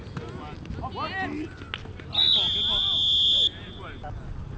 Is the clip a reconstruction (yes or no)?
no